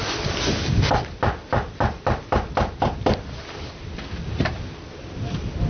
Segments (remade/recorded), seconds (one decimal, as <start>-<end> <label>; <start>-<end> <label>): 0.0-0.5 recorded; 0.5-5.7 remade